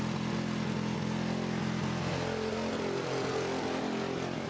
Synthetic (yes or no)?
no